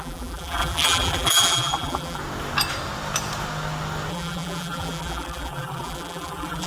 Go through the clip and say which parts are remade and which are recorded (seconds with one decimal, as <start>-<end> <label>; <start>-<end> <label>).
0.0-2.2 remade; 2.2-4.1 recorded; 4.1-6.7 remade